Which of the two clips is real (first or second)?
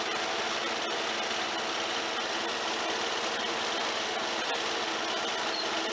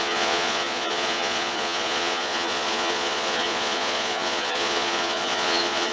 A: first